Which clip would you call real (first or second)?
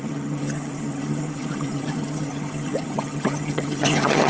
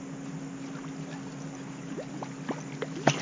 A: second